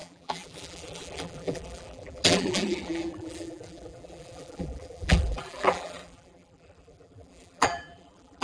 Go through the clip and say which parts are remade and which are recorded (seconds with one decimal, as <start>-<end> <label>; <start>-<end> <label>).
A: 0.0-8.4 remade